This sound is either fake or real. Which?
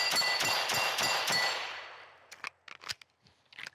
real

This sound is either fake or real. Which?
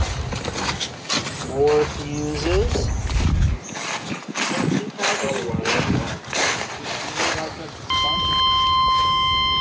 real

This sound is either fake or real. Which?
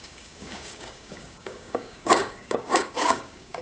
fake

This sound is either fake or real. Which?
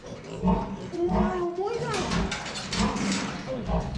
real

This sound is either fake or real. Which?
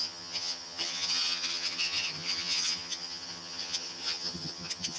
fake